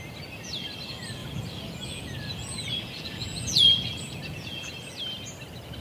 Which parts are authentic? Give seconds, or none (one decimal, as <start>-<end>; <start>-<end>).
0.0-1.2; 4.7-5.8